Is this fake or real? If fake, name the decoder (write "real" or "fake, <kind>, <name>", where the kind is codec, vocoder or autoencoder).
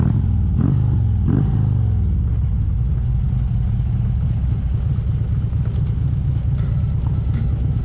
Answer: real